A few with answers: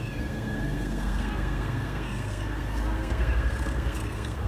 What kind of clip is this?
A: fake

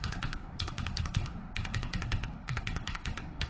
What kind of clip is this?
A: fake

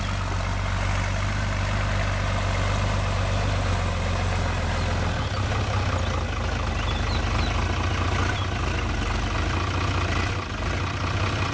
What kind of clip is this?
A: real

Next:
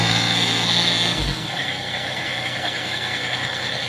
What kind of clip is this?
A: fake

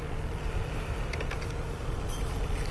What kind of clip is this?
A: real